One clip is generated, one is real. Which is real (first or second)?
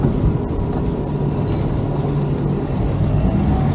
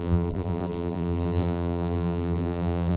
first